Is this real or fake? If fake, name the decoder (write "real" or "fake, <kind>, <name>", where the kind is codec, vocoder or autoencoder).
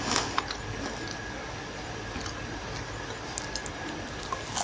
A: real